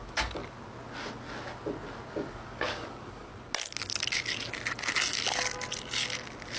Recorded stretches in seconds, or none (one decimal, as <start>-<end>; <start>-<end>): 0.4-2.3; 3.3-6.6